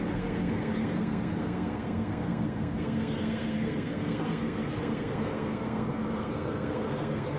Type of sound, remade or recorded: remade